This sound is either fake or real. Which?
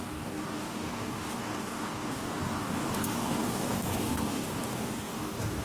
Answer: fake